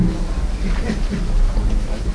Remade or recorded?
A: recorded